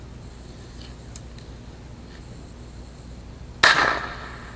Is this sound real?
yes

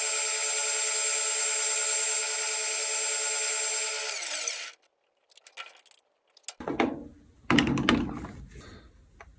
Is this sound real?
yes